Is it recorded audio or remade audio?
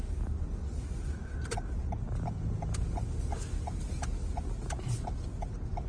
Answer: recorded